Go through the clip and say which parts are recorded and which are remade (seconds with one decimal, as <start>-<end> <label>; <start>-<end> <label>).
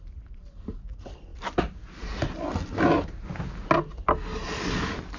0.0-5.2 recorded